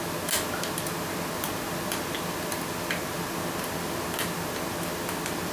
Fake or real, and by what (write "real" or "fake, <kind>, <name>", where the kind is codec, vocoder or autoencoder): real